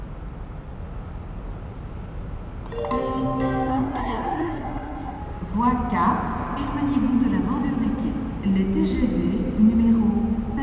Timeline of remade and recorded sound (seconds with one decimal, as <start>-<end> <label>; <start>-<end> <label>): 0.0-3.7 recorded; 3.7-5.2 remade; 5.2-10.6 recorded